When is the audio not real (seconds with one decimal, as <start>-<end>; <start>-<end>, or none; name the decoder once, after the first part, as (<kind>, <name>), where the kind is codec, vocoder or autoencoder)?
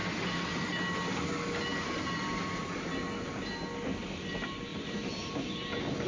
0.0-0.6 (vocoder, BigVGAN v2); 4.7-5.3